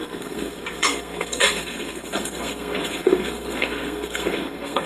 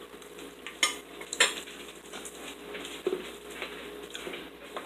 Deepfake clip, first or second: first